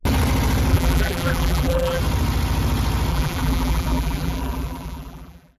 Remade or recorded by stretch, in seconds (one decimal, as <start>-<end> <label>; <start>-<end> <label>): 0.0-0.7 recorded; 0.7-2.0 remade; 2.0-3.1 recorded; 3.1-5.6 remade